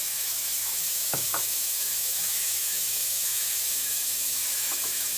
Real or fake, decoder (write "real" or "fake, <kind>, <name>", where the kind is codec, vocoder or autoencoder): fake, autoencoder, DAC-VAE